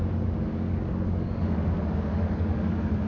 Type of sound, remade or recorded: remade